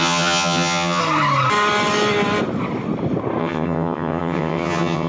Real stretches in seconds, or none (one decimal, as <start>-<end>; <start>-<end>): 1.0-3.4